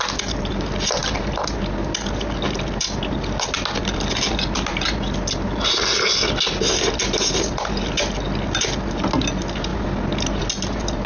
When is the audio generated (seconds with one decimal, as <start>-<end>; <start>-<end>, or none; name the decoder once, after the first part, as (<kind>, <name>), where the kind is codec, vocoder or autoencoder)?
none